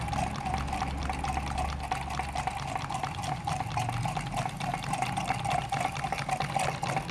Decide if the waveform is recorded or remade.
recorded